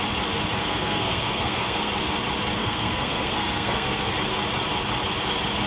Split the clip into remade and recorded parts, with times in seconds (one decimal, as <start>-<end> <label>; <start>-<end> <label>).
0.0-0.6 recorded; 0.6-1.9 remade; 1.9-2.6 recorded; 2.6-4.1 remade; 4.1-5.7 recorded

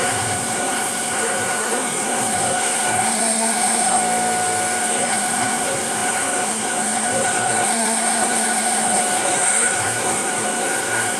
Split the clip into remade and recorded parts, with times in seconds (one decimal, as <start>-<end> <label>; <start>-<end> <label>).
0.0-4.0 remade; 4.0-4.8 recorded; 4.8-11.2 remade

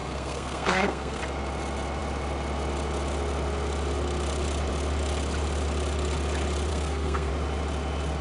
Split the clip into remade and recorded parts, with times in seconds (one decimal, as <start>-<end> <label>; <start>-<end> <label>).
0.0-1.2 remade; 1.2-6.7 recorded; 6.7-7.3 remade; 7.3-8.2 recorded

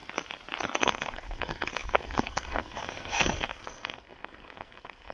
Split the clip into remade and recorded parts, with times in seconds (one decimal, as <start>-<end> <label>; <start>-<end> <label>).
0.0-0.8 recorded; 0.8-5.1 remade

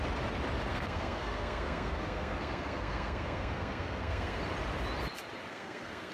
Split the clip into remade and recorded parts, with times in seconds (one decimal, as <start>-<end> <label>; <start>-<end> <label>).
0.0-0.7 recorded; 0.7-4.4 remade; 4.4-5.5 recorded; 5.5-6.1 remade

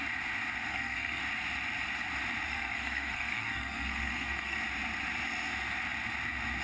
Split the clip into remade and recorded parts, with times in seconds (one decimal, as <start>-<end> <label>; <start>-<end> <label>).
0.0-0.7 recorded; 0.7-1.2 remade; 1.2-2.5 recorded; 2.5-4.6 remade; 4.6-6.6 recorded

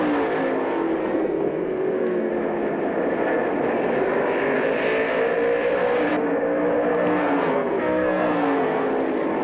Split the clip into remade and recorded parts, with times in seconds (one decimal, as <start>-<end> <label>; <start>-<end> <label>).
0.0-1.0 recorded; 1.0-2.3 remade; 2.3-6.9 recorded; 6.9-8.9 remade; 8.9-9.4 recorded